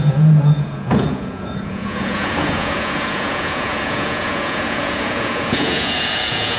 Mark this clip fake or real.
fake